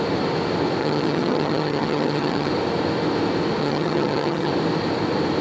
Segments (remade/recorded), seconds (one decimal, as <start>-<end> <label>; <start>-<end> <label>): 0.0-0.8 recorded; 0.8-2.5 remade; 2.5-3.6 recorded; 3.6-4.5 remade; 4.5-5.4 recorded